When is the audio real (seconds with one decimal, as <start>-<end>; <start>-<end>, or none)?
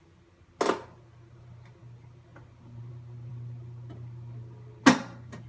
0.0-5.5